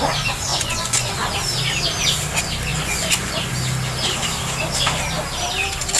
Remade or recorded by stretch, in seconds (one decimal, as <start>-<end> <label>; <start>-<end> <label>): 0.0-0.5 recorded; 0.5-1.1 remade; 1.1-2.7 recorded; 2.7-3.5 remade; 3.5-6.0 recorded